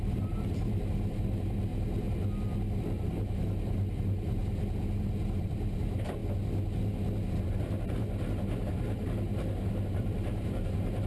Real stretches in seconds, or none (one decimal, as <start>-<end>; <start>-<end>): 1.7-2.8; 4.4-5.4; 6.2-7.4